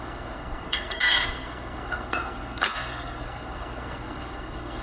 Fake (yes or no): yes